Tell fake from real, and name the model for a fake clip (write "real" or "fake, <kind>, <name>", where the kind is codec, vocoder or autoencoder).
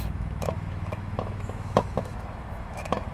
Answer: fake, autoencoder, DAC-VAE